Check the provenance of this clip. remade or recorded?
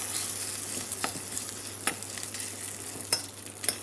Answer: recorded